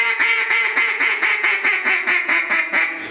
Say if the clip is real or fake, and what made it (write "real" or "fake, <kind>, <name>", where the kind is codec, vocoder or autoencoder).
fake, vocoder, Vocos